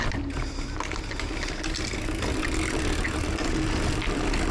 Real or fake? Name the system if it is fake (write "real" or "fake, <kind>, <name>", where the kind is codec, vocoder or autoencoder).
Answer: real